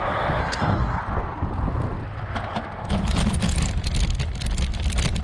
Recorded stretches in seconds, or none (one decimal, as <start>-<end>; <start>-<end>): 0.0-0.4; 1.0-5.2